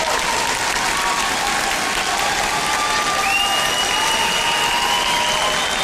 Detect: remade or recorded recorded